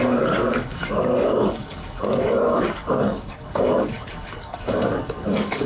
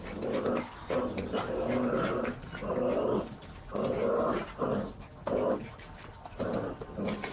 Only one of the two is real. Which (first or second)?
second